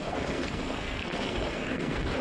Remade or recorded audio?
remade